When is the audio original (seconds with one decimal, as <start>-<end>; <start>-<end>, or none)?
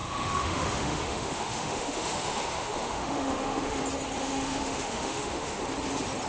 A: 3.8-4.2; 5.6-6.3